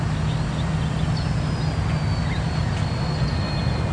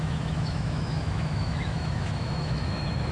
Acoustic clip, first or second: first